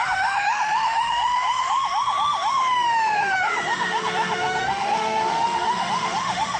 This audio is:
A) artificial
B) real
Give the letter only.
A